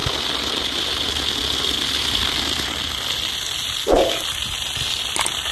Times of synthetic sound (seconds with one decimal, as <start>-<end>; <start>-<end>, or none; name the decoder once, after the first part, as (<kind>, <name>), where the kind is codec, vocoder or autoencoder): none